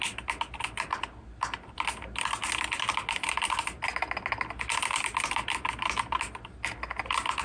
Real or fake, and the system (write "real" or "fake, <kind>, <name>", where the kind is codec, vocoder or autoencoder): real